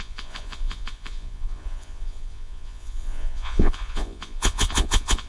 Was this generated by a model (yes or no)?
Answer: yes